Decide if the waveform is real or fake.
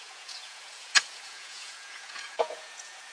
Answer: fake